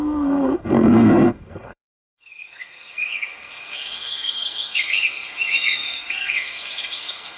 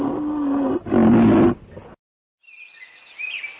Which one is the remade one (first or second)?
first